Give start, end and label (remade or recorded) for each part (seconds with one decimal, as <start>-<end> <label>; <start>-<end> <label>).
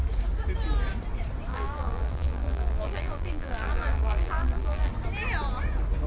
0.0-1.5 recorded; 1.5-4.9 remade; 4.9-6.1 recorded